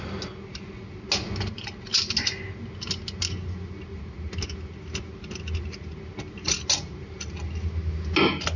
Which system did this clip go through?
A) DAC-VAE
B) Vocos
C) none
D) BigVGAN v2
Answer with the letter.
C